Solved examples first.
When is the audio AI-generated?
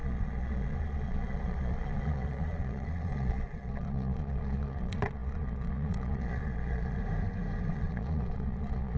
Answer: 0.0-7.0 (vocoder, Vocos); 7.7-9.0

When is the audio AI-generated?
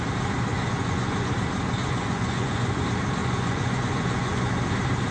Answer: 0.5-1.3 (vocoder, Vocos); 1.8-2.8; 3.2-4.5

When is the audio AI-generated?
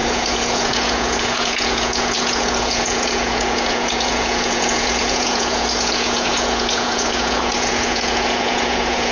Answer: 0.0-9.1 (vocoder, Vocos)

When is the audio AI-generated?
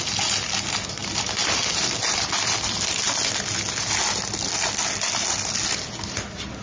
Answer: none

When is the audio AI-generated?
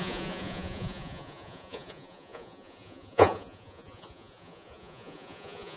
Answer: 0.0-5.8 (vocoder, Vocos)